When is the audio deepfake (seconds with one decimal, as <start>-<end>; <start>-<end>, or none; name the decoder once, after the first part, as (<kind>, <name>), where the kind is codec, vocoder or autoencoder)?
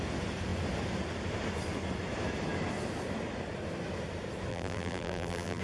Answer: 4.5-5.6 (vocoder, BigVGAN v2)